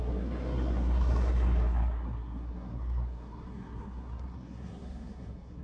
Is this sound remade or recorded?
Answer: remade